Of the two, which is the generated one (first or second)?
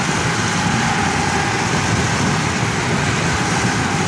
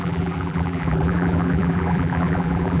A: second